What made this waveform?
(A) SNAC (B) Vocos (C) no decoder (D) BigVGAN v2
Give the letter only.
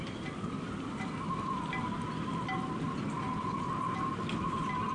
C